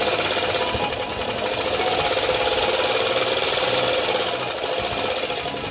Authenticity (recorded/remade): recorded